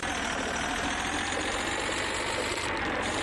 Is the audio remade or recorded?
recorded